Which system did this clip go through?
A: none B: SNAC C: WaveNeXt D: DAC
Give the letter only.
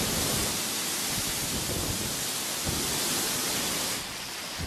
A